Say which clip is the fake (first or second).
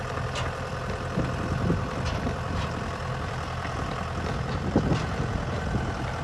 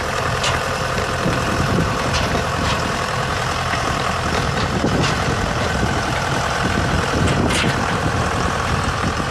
second